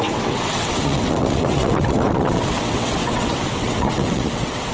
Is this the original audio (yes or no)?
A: no